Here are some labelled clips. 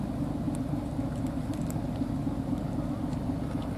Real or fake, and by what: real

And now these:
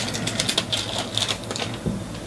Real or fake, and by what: real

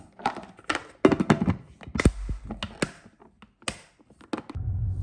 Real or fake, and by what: real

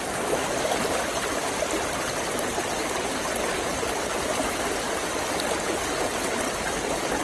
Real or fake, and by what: real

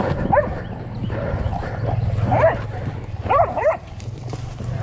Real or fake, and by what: fake, vocoder, BigVGAN v2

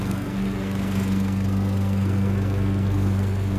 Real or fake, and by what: fake, codec, SNAC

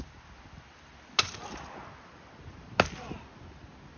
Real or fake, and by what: real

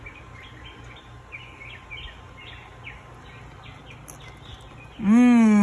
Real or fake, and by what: real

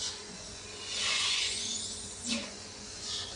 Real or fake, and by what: fake, vocoder, Vocos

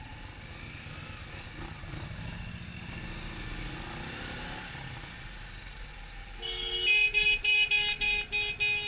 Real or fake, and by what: real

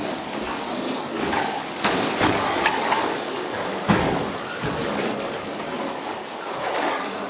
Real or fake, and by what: fake, codec, DAC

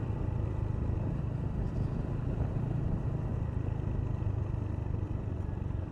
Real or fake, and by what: fake, vocoder, BigVGAN v2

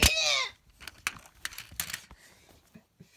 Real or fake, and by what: real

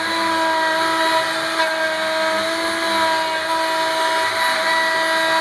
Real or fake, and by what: real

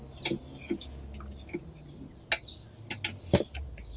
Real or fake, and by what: real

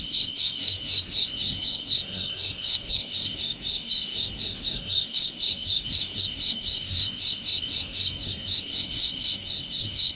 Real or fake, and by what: fake, codec, SNAC